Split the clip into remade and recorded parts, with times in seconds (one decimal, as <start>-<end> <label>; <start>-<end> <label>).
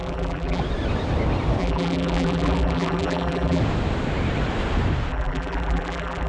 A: 0.0-0.6 remade; 0.6-1.6 recorded; 1.6-3.6 remade; 3.6-5.1 recorded; 5.1-6.3 remade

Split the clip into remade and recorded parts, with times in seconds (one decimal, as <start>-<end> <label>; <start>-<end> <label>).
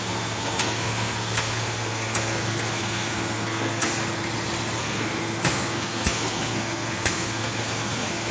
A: 0.0-3.9 remade; 3.9-4.8 recorded; 4.8-8.3 remade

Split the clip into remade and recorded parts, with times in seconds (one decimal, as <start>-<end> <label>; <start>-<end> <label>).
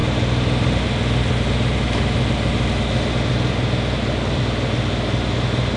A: 0.0-5.8 recorded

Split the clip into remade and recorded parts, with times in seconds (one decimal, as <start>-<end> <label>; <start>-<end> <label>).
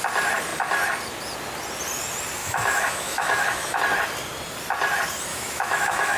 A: 0.0-2.4 recorded; 2.4-3.8 remade; 3.8-5.3 recorded; 5.3-6.2 remade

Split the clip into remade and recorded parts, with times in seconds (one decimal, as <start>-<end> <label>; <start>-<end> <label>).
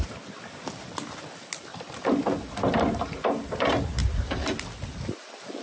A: 0.0-5.6 recorded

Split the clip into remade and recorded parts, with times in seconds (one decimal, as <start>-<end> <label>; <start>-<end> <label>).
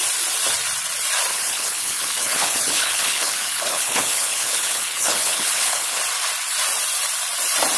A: 0.0-1.3 recorded; 1.3-6.0 remade; 6.0-7.8 recorded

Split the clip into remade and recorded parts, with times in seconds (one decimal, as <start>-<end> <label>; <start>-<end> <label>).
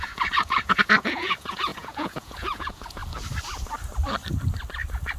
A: 0.0-3.0 remade; 3.0-5.2 recorded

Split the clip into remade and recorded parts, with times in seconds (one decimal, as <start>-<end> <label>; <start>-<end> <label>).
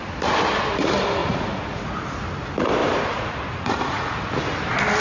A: 0.0-1.2 recorded; 1.2-1.8 remade; 1.8-2.8 recorded; 2.8-4.1 remade; 4.1-5.0 recorded